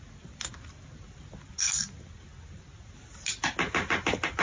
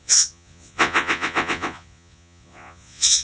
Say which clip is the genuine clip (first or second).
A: first